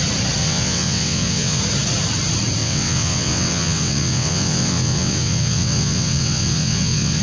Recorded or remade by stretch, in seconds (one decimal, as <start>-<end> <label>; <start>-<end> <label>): 0.0-0.4 recorded; 0.4-1.6 remade; 1.6-2.6 recorded; 2.6-7.2 remade